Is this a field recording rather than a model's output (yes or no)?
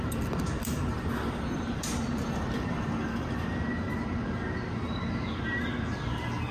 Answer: yes